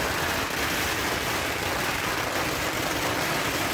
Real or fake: real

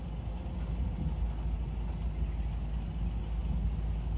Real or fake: real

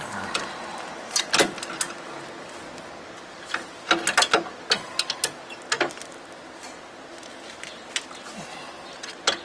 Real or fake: real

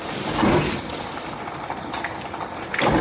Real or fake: real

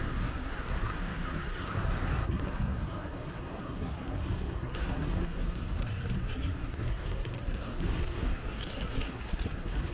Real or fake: fake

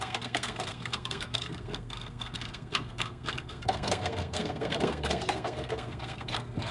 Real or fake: fake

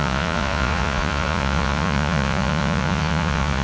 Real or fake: fake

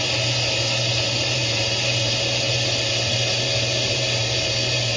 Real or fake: fake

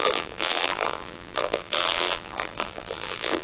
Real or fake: fake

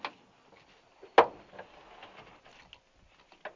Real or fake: real